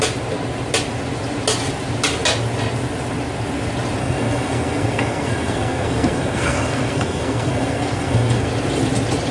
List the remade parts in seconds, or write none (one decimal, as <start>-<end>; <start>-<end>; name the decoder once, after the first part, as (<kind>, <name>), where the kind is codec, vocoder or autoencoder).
4.0-8.5 (codec, SNAC)